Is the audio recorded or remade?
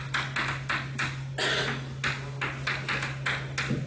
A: recorded